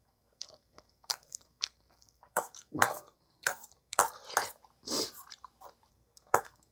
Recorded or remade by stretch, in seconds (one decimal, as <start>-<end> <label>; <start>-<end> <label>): 0.0-4.0 remade; 4.0-5.9 recorded; 5.9-6.7 remade